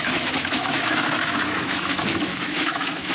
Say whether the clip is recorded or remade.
remade